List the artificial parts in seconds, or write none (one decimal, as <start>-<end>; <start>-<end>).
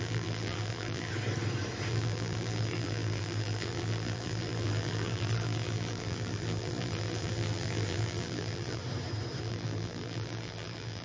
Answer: 0.0-1.1; 1.9-8.8; 9.4-11.0